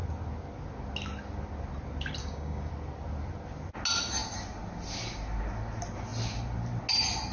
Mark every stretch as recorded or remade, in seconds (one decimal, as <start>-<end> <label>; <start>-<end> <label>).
0.0-2.2 recorded; 2.2-2.7 remade; 2.7-7.3 recorded